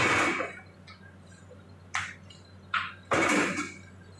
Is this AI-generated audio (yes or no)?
no